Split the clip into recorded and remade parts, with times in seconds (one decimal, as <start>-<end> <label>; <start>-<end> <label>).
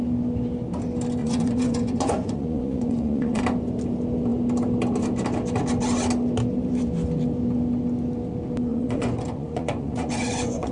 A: 0.0-1.2 recorded; 1.2-3.4 remade; 3.4-8.7 recorded; 8.7-10.7 remade